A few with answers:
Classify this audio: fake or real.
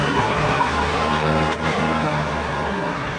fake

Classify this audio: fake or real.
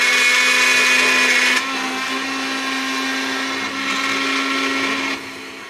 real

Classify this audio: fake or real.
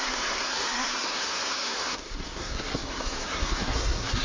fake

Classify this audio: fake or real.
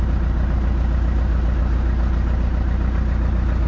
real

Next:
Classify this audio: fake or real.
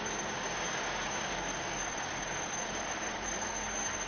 fake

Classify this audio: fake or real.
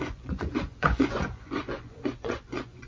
fake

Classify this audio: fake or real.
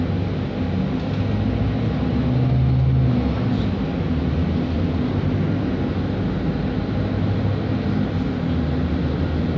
real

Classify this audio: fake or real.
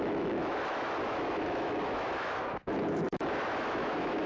fake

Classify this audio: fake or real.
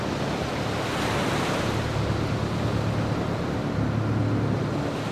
real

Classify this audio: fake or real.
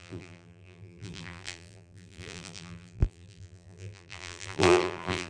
fake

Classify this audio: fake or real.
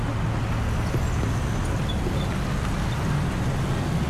real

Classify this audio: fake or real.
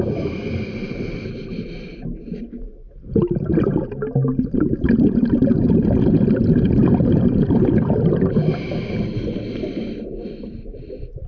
real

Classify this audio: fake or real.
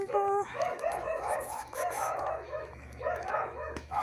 fake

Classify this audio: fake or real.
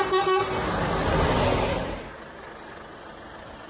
real